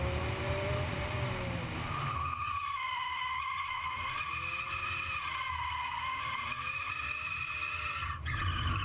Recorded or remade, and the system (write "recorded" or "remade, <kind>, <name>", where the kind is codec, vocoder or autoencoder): remade, vocoder, BigVGAN v2